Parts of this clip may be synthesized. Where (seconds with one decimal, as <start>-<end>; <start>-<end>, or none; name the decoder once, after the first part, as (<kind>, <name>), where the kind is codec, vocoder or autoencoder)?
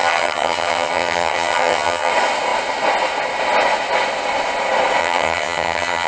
0.0-2.1 (vocoder, HiFi-GAN); 5.0-6.1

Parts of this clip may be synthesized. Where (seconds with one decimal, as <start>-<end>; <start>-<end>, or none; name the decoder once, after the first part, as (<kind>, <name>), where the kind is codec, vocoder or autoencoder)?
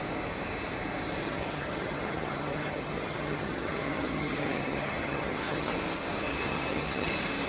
1.2-5.7 (vocoder, HiFi-GAN); 6.3-7.1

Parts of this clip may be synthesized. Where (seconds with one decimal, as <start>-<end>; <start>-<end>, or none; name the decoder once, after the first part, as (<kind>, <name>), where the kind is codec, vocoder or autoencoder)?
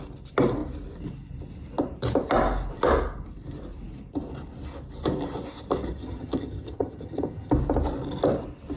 5.8-7.5 (vocoder, HiFi-GAN)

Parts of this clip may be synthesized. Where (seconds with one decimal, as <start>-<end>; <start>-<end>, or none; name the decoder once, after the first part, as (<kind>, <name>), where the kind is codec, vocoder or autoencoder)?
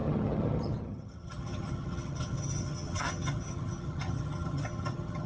0.0-5.3 (vocoder, HiFi-GAN)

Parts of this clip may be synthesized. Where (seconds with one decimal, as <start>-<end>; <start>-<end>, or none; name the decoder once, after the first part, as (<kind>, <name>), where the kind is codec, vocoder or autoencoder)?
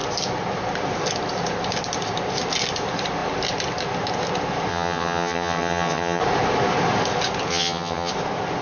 4.7-6.2 (vocoder, HiFi-GAN); 7.5-8.1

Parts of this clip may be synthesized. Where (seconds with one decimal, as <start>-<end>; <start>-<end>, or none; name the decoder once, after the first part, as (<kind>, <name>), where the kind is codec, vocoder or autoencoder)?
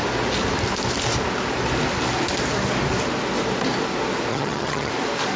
4.3-4.9 (vocoder, HiFi-GAN)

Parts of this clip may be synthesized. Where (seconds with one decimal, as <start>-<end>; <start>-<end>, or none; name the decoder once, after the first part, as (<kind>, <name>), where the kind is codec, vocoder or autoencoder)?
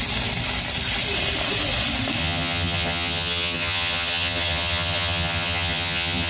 2.2-6.3 (vocoder, HiFi-GAN)